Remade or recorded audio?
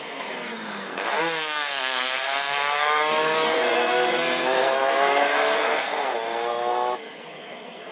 remade